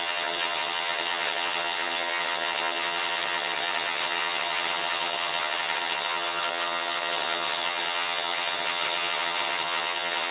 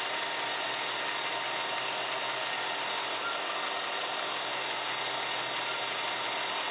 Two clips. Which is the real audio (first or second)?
second